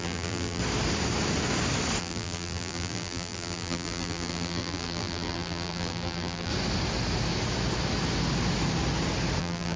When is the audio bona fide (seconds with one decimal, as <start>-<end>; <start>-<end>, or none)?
0.6-2.0; 6.5-9.4